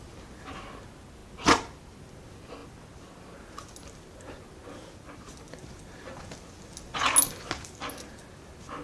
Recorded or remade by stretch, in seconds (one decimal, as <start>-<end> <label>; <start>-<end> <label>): 0.0-8.8 recorded